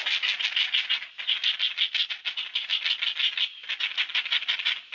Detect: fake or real real